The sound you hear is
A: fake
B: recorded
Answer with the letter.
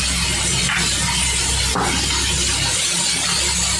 B